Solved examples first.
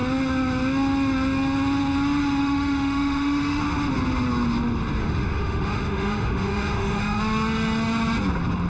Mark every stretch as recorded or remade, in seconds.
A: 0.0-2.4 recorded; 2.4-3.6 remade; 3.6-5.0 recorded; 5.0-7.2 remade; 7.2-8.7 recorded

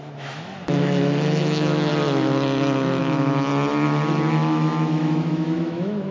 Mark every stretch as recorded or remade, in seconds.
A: 0.0-1.9 remade; 1.9-3.0 recorded; 3.0-3.5 remade; 3.5-4.3 recorded; 4.3-6.1 remade

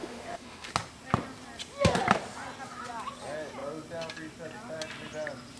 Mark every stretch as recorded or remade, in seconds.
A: 0.0-0.7 remade; 0.7-5.6 recorded

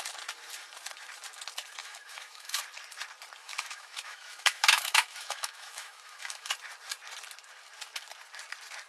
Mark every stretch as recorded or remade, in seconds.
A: 0.0-1.8 recorded; 1.8-2.6 remade; 2.6-3.4 recorded; 3.4-6.5 remade; 6.5-8.9 recorded

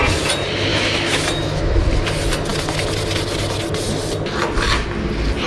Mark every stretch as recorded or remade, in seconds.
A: 0.0-0.7 recorded; 0.7-1.8 remade; 1.8-5.5 recorded

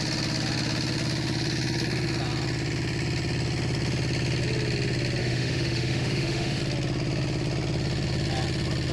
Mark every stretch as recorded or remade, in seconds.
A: 0.0-5.2 recorded; 5.2-6.6 remade; 6.6-8.9 recorded

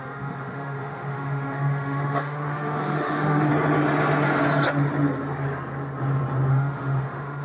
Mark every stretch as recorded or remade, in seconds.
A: 0.0-3.5 remade; 3.5-6.5 recorded; 6.5-7.4 remade